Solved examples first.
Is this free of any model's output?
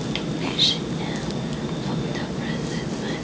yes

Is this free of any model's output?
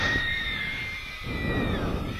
yes